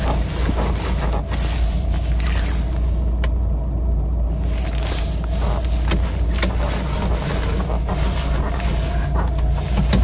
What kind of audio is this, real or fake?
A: real